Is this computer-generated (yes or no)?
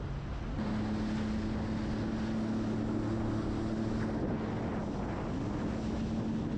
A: no